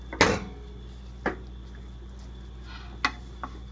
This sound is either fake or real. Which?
real